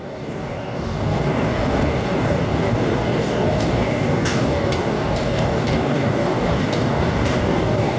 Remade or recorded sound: remade